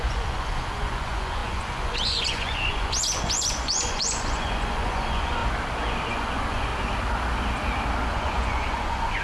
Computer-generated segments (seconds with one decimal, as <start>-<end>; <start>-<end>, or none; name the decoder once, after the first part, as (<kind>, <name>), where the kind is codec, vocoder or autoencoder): 0.0-5.4 (vocoder, Vocos); 6.1-6.7; 8.1-9.2